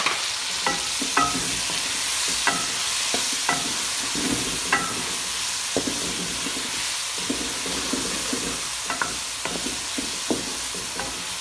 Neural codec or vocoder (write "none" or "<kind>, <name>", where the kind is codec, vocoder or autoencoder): none